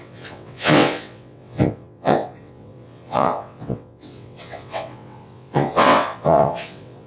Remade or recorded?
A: remade